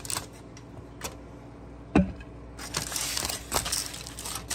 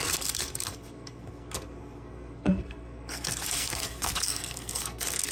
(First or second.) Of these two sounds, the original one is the first